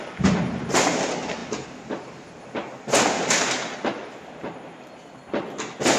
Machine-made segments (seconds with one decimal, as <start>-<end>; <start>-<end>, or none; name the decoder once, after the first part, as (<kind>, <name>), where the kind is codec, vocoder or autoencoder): none